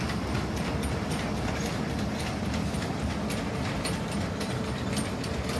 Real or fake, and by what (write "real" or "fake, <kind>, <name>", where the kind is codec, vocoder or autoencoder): real